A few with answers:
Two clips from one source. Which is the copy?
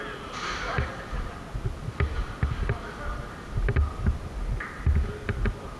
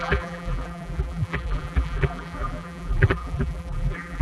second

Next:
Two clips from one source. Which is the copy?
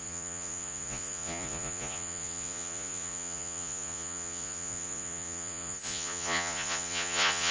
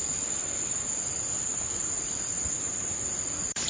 first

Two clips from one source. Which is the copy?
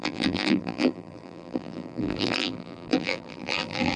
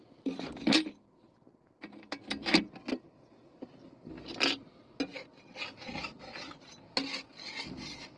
first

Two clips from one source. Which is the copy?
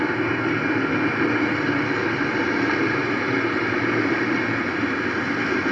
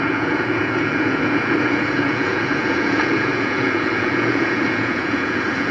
second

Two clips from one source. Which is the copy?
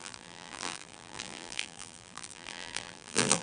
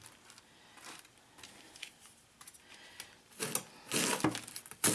first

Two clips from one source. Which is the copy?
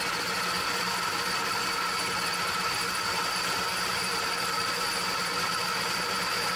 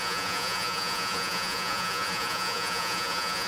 second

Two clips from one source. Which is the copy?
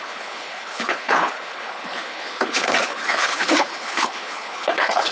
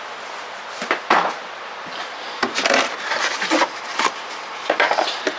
first